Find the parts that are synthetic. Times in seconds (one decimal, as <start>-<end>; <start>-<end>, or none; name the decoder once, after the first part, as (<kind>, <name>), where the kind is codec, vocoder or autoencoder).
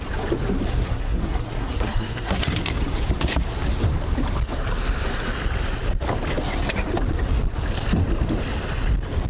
0.7-2.4 (codec, SNAC)